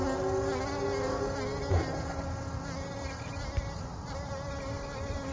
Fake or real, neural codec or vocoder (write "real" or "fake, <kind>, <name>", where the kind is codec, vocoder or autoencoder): real